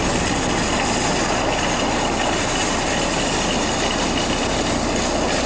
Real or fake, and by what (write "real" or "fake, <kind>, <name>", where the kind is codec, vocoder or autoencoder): real